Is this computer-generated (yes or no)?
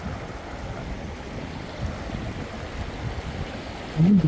no